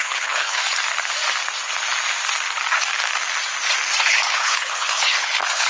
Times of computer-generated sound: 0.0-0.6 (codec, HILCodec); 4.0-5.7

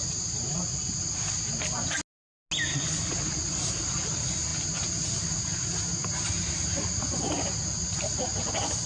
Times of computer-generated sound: none

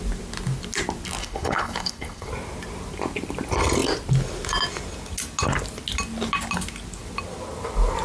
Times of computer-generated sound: 1.2-2.3 (codec, HILCodec)

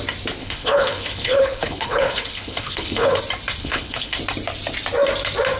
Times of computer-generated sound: 0.4-3.2 (codec, HILCodec); 3.6-4.2

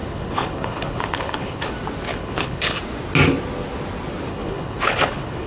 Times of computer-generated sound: 0.0-1.7 (codec, HILCodec); 2.1-2.8; 4.3-5.5

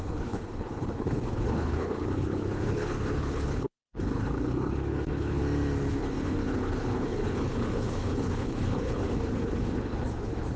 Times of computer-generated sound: 0.0-5.4 (codec, HILCodec); 5.9-10.6

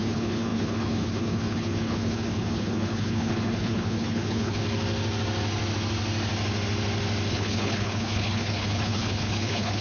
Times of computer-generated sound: 0.0-4.6 (codec, HILCodec); 7.3-9.8

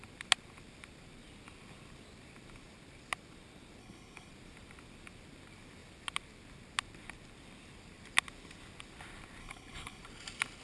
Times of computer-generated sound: 3.8-4.3 (codec, HILCodec); 9.4-10.0